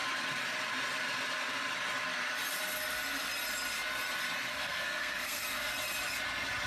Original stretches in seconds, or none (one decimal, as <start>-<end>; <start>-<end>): 0.0-4.5; 5.7-6.7